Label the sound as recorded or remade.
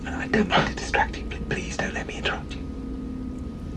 recorded